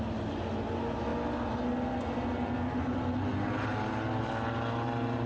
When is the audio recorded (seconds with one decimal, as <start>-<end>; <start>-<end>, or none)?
0.0-5.3